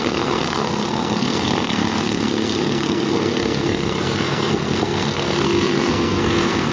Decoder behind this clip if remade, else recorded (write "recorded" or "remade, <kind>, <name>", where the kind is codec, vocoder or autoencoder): remade, codec, SNAC